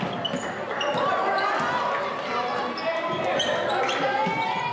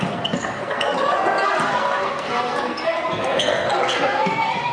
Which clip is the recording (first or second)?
first